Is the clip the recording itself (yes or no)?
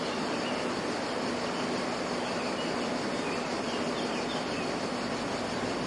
yes